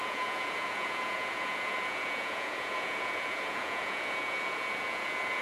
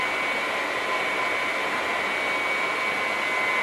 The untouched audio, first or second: second